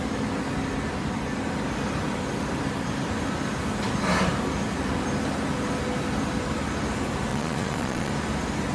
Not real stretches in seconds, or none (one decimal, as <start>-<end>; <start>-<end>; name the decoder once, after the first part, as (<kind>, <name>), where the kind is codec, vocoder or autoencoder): 7.3-8.1 (vocoder, Vocos)